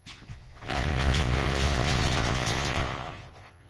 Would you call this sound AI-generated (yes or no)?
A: yes